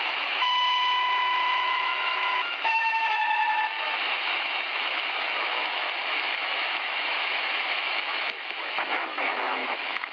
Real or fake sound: fake